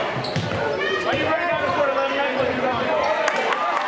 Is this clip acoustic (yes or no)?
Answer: yes